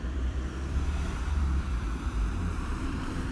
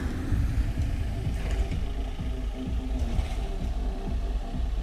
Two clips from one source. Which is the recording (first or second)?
second